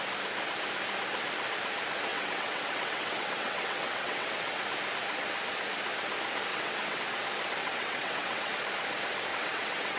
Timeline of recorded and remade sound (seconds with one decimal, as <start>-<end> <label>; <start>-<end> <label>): 0.0-2.1 recorded; 2.1-4.6 remade; 4.6-6.5 recorded; 6.5-7.0 remade; 7.0-7.6 recorded; 7.6-8.5 remade; 8.5-9.3 recorded; 9.3-10.0 remade